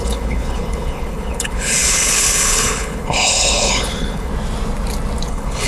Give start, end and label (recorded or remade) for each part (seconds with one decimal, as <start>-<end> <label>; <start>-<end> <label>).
0.0-4.3 remade; 4.3-5.3 recorded; 5.3-5.7 remade